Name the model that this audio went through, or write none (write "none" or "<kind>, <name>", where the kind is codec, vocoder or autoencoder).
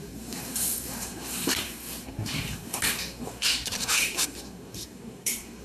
codec, SNAC